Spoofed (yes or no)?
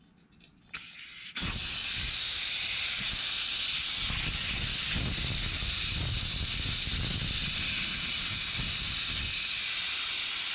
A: no